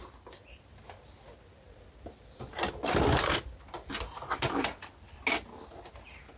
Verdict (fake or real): real